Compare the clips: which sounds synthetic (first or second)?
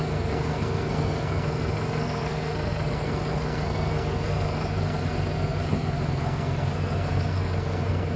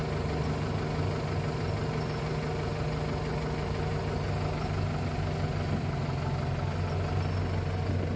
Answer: first